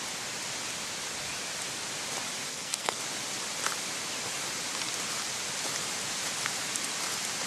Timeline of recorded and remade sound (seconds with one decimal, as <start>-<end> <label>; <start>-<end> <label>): 0.0-2.5 recorded; 2.5-3.0 remade; 3.0-7.5 recorded